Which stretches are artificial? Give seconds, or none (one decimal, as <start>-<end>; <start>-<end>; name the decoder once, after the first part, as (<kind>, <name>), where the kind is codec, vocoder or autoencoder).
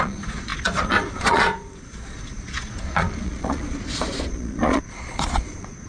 0.0-5.9 (vocoder, Vocos)